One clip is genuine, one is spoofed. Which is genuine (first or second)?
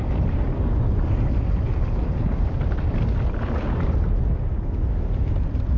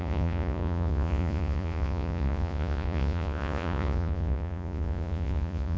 first